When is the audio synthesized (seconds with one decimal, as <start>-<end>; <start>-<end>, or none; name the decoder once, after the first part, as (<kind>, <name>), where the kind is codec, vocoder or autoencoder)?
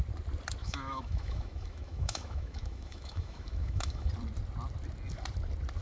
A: 0.6-4.1 (autoencoder, DAC-VAE)